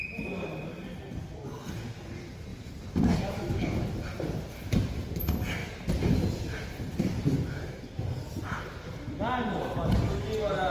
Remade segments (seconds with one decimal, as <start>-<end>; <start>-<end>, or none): none